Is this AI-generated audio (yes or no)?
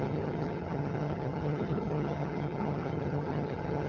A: yes